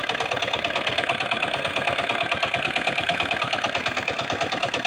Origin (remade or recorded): remade